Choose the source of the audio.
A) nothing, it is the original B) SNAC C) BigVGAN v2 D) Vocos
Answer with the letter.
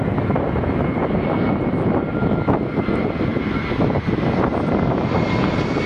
A